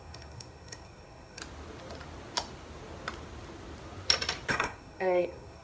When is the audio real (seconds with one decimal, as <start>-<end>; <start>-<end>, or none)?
1.4-4.5